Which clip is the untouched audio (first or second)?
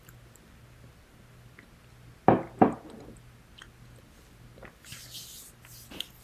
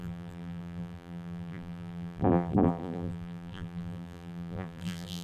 first